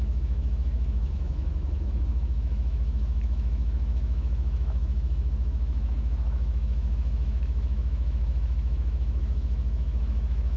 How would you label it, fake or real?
fake